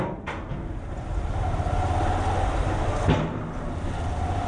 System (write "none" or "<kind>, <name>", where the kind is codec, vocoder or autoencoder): none